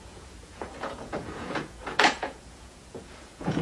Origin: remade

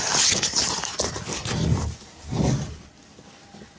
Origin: recorded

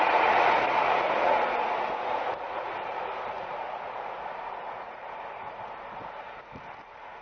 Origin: remade